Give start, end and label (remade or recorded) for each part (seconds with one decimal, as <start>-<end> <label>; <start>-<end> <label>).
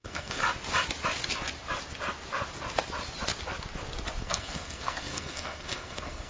0.0-0.4 remade; 0.4-4.2 recorded; 4.2-6.3 remade